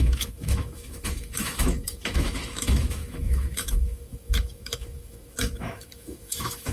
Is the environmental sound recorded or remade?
remade